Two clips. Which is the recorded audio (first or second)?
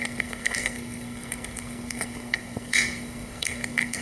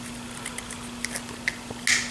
second